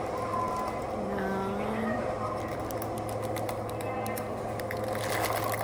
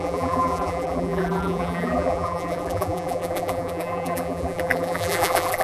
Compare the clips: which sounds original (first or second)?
first